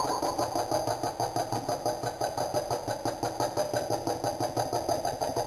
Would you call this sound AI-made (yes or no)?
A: no